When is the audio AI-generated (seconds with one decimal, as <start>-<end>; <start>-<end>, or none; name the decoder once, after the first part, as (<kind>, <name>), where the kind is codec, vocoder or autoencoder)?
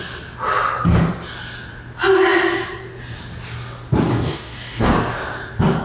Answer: 4.1-4.9 (codec, DAC)